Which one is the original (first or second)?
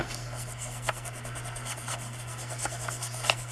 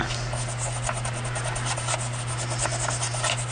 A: second